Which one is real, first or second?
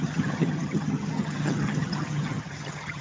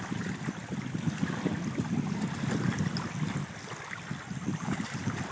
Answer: second